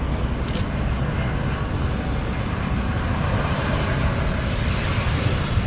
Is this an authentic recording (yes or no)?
yes